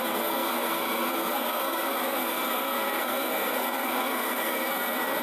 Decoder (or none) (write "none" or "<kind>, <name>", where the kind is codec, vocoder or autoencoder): codec, SNAC